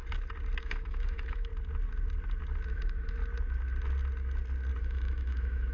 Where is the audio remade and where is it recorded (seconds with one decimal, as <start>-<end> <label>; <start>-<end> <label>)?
0.0-0.6 recorded; 0.6-1.5 remade; 1.5-2.7 recorded; 2.7-3.2 remade; 3.2-4.8 recorded; 4.8-5.7 remade